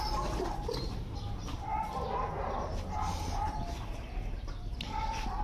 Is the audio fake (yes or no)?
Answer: no